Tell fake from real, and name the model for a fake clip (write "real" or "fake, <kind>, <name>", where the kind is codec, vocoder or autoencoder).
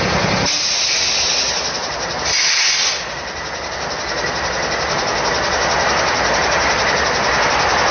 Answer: real